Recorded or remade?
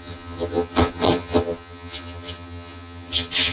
remade